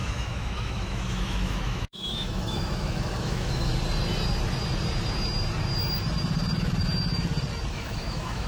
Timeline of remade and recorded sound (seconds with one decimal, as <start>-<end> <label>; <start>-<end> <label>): 0.0-3.7 remade; 3.7-7.7 recorded; 7.7-8.5 remade

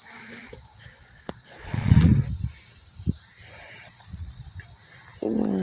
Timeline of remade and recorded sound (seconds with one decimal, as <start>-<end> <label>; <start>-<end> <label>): 0.0-1.0 recorded; 1.0-2.1 remade; 2.1-3.8 recorded; 3.8-4.5 remade; 4.5-5.6 recorded

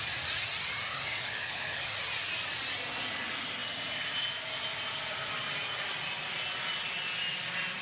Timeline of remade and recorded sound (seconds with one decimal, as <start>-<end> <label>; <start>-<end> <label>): 0.0-1.1 recorded; 1.1-1.9 remade; 1.9-7.8 recorded

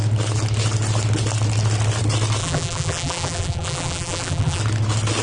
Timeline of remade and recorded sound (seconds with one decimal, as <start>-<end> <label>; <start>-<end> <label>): 0.0-2.4 recorded; 2.4-4.6 remade; 4.6-5.2 recorded